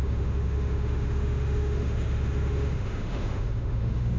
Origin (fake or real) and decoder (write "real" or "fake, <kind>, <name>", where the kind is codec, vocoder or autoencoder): fake, autoencoder, DAC-VAE